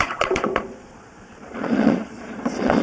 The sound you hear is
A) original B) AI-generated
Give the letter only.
B